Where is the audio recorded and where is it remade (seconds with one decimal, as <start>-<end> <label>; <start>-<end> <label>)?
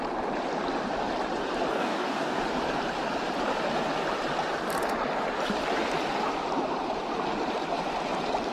0.0-1.7 recorded; 1.7-2.4 remade; 2.4-8.5 recorded